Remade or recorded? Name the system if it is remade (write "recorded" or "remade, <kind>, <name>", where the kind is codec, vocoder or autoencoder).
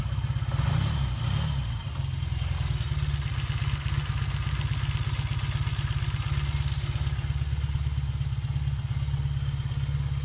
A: recorded